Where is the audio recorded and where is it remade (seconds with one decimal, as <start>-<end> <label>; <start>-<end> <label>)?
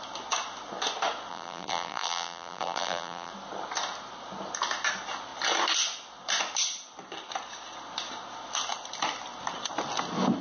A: 0.0-1.3 recorded; 1.3-3.3 remade; 3.3-10.4 recorded